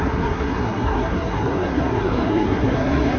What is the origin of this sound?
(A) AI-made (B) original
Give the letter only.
A